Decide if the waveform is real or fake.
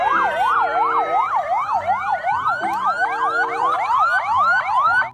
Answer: real